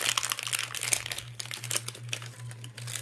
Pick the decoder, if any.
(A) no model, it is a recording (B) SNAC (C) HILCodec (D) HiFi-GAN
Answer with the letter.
A